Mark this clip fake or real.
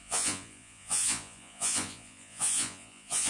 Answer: fake